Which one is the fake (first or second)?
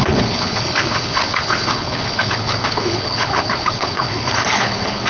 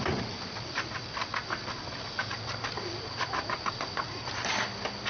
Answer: first